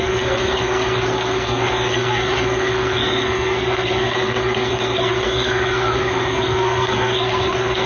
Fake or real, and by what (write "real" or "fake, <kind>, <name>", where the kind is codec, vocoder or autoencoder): fake, codec, SNAC